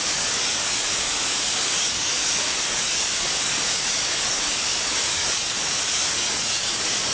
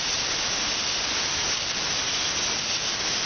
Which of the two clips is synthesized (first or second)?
first